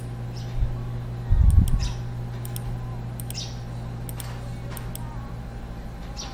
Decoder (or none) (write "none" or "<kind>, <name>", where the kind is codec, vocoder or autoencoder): none